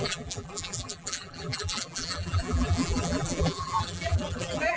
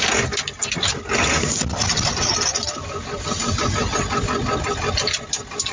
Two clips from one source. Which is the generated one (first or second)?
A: first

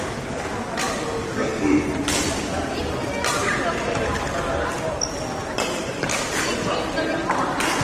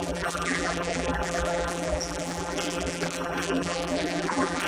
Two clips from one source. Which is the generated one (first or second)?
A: second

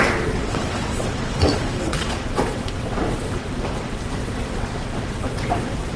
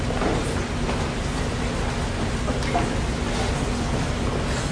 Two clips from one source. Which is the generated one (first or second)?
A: first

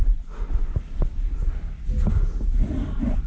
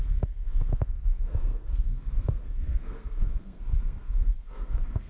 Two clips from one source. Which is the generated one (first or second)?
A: second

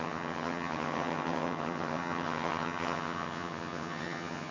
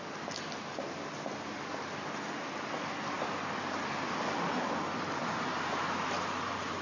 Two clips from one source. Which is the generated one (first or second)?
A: first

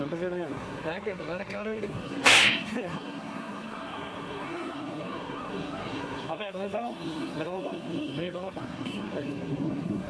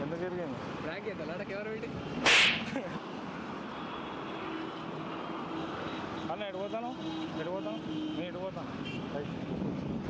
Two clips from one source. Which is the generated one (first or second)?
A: first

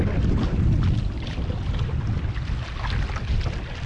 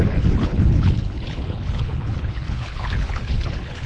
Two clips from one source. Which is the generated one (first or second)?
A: second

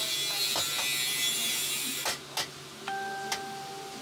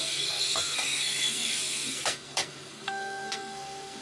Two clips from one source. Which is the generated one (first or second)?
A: second